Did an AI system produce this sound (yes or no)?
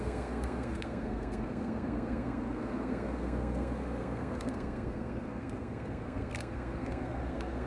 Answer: yes